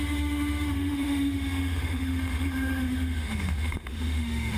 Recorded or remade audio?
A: remade